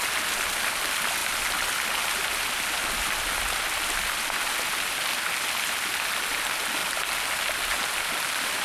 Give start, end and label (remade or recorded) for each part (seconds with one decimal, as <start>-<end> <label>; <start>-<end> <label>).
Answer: 0.0-8.6 recorded